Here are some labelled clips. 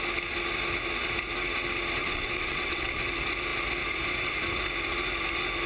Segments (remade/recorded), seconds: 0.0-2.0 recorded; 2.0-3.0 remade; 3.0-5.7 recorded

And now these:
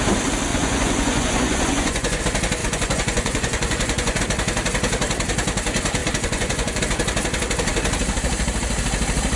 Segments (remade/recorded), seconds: 0.0-0.5 recorded; 0.5-2.2 remade; 2.2-2.6 recorded; 2.6-4.2 remade; 4.2-6.0 recorded; 6.0-6.8 remade; 6.8-9.4 recorded